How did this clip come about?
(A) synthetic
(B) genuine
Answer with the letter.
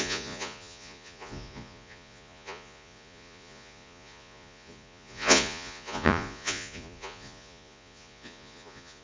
A